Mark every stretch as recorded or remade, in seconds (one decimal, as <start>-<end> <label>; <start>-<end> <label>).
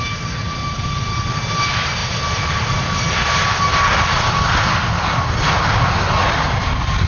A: 0.0-7.1 recorded